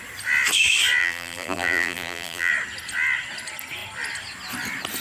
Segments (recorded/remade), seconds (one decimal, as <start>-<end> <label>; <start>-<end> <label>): 0.0-1.0 recorded; 1.0-2.5 remade; 2.5-5.0 recorded